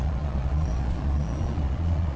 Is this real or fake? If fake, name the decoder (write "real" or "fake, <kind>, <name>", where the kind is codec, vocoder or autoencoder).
fake, vocoder, Vocos